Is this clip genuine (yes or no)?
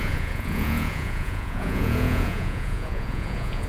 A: no